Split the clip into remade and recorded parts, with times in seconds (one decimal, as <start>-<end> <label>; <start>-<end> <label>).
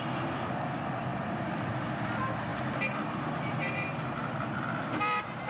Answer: 0.0-5.5 recorded